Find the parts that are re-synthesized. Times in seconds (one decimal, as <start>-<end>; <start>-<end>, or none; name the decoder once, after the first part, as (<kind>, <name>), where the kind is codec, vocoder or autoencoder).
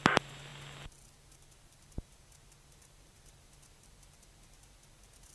none